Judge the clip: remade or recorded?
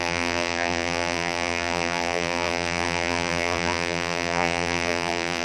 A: remade